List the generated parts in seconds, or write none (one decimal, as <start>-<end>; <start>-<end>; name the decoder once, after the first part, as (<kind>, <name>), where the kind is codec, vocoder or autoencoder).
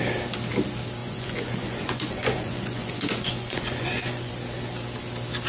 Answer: 1.0-4.3 (vocoder, Vocos)